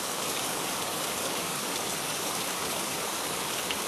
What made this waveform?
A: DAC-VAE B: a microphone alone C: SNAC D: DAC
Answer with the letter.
D